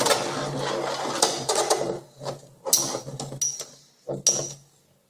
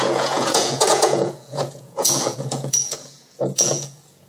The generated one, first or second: second